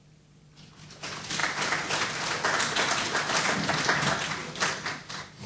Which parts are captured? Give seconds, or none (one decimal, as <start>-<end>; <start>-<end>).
0.0-5.5